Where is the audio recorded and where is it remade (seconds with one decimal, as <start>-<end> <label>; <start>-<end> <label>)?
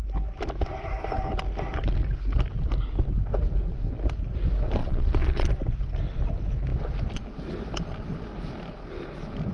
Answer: 0.0-4.8 recorded; 4.8-5.5 remade; 5.5-9.5 recorded